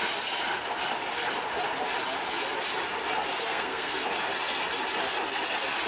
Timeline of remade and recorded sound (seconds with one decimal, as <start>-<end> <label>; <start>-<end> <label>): 0.0-3.4 recorded; 3.4-4.0 remade; 4.0-5.9 recorded